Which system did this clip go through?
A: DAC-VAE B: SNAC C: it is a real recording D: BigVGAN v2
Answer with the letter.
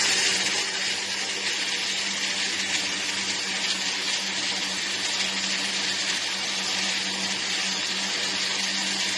C